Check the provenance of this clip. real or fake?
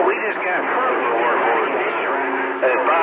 real